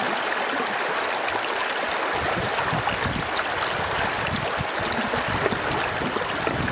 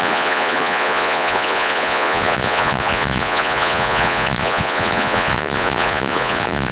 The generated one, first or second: second